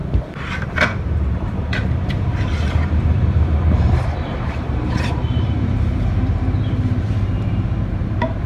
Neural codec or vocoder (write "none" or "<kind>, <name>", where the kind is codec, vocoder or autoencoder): vocoder, BigVGAN v2